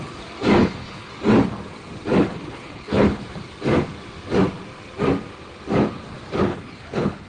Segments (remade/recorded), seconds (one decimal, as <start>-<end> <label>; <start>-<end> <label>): 0.0-0.6 recorded; 0.6-1.1 remade; 1.1-2.3 recorded; 2.3-3.2 remade; 3.2-6.5 recorded; 6.5-7.3 remade